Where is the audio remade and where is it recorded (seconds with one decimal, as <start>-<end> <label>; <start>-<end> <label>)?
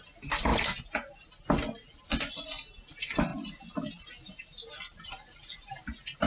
0.0-6.3 recorded